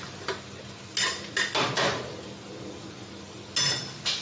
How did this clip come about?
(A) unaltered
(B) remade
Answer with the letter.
A